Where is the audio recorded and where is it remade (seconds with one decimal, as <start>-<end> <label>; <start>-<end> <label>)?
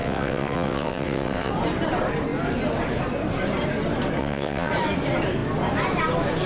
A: 0.0-1.5 remade; 1.5-4.2 recorded; 4.2-4.7 remade; 4.7-6.5 recorded